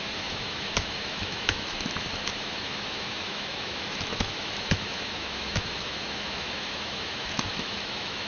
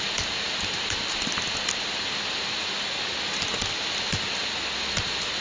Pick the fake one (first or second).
first